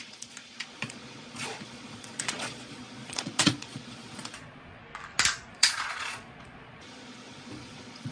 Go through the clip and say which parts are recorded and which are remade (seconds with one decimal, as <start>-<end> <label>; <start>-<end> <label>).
0.0-4.8 remade; 4.8-5.5 recorded; 5.5-8.1 remade